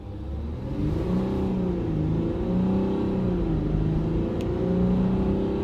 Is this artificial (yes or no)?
no